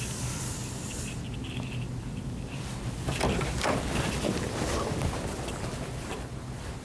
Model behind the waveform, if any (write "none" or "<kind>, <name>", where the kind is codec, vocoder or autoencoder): none